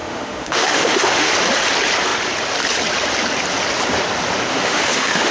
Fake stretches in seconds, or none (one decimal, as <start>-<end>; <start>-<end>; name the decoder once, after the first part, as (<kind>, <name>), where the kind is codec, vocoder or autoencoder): 0.0-1.3 (autoencoder, DAC-VAE); 4.5-5.3